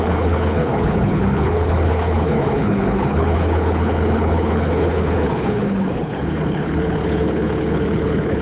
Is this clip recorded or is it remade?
remade